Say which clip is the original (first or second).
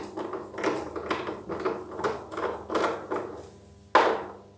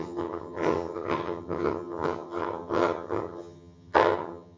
first